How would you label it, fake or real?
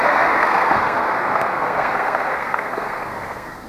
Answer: fake